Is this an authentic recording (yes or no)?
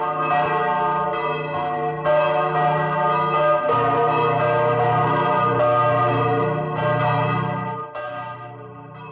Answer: yes